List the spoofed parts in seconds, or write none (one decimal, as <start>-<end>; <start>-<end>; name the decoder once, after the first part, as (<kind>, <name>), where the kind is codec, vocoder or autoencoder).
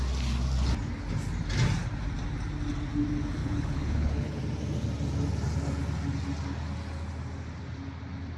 3.4-4.4 (codec, HILCodec)